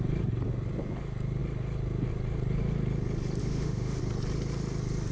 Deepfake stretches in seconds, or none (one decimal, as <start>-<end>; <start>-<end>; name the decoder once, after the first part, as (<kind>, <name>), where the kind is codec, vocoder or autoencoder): 3.4-4.0 (autoencoder, DAC-VAE)